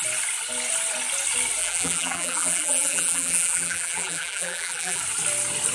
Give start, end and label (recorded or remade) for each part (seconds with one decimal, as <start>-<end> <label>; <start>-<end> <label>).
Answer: 0.0-1.6 recorded; 1.6-5.0 remade; 5.0-5.7 recorded